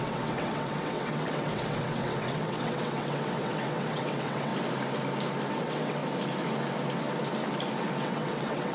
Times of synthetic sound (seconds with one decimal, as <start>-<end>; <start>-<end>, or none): 0.0-4.5; 5.5-6.0; 8.0-8.7